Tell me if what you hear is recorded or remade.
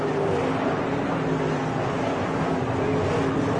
recorded